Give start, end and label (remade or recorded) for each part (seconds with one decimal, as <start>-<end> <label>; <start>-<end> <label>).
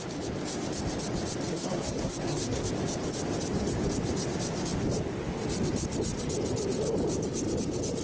0.0-1.5 recorded; 1.5-2.7 remade; 2.7-8.0 recorded